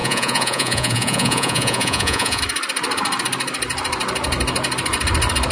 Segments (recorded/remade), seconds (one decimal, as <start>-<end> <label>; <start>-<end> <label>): 0.0-2.4 remade; 2.4-5.5 recorded